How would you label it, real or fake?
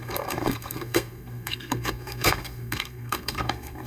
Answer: fake